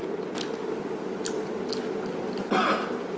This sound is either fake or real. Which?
real